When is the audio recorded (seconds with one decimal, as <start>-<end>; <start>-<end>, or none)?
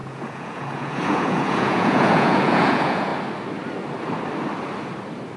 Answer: 3.1-5.4